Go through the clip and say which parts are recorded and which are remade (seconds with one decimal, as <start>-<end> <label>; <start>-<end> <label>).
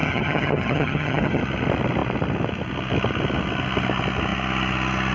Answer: 0.0-1.4 remade; 1.4-5.1 recorded